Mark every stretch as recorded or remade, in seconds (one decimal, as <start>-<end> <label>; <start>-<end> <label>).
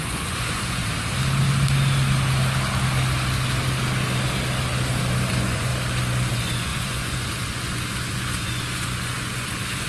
0.0-0.8 remade; 0.8-5.3 recorded; 5.3-5.7 remade; 5.7-6.3 recorded; 6.3-9.9 remade